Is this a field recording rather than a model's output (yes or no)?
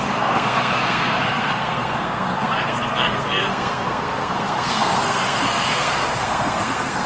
no